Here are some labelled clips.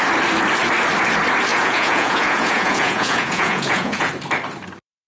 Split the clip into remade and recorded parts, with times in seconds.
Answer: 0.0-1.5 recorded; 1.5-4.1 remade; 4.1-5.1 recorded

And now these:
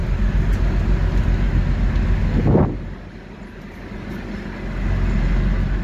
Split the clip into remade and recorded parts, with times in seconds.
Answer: 0.0-5.8 recorded

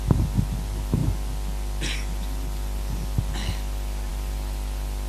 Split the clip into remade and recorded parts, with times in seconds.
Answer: 0.0-5.1 recorded

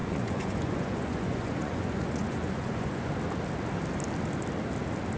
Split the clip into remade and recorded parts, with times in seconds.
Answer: 0.0-3.1 remade; 3.1-5.2 recorded